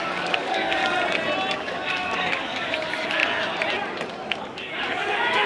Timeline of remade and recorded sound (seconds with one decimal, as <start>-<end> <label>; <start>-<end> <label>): 0.0-0.8 remade; 0.8-1.5 recorded; 1.5-3.2 remade; 3.2-4.4 recorded; 4.4-5.5 remade